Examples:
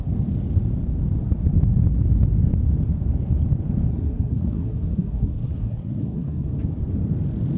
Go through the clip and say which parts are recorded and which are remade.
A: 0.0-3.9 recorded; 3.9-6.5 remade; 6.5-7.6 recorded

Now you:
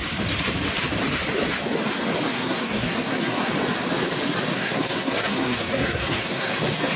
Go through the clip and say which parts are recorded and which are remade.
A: 0.0-2.3 recorded; 2.3-3.5 remade; 3.5-4.5 recorded; 4.5-6.5 remade; 6.5-7.0 recorded

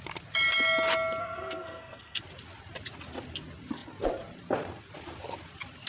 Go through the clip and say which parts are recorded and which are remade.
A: 0.0-1.2 recorded; 1.2-2.2 remade; 2.2-5.9 recorded